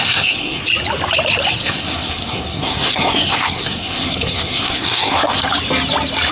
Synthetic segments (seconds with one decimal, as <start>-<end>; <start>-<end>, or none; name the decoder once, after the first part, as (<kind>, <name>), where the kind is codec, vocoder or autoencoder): 0.0-0.6 (codec, SNAC); 1.6-5.4